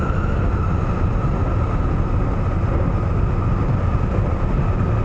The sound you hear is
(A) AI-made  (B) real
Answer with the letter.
B